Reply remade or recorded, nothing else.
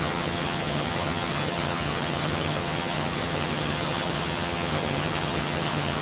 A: remade